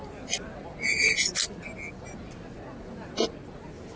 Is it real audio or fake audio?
real